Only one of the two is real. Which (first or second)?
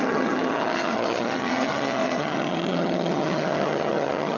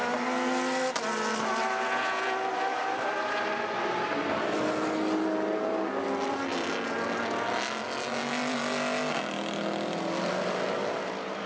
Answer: second